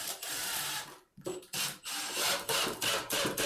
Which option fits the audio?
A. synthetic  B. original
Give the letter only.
A